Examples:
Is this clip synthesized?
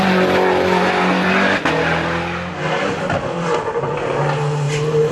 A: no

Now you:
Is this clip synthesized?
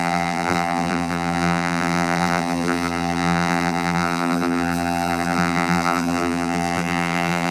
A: yes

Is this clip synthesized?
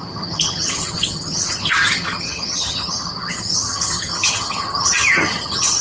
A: yes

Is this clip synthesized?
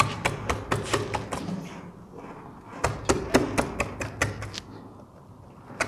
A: no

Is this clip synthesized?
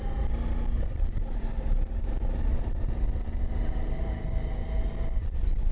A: no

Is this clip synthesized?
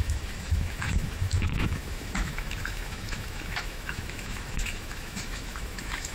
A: yes